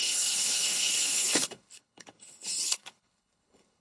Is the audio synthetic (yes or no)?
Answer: yes